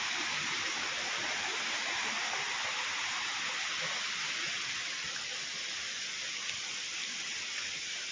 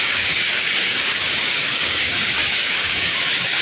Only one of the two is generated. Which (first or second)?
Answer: second